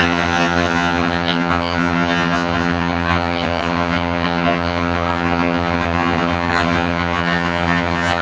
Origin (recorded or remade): remade